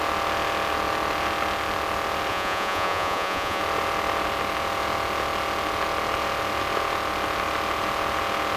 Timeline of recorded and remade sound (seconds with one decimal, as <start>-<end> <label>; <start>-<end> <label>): 0.0-2.3 recorded; 2.3-3.6 remade; 3.6-8.6 recorded